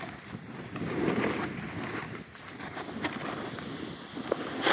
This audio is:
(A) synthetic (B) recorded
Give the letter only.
B